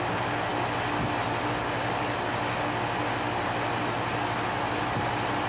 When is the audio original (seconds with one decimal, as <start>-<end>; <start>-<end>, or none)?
0.0-5.5